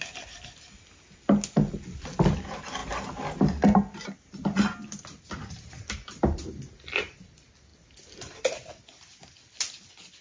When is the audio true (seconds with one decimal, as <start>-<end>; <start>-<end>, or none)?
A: 0.0-10.2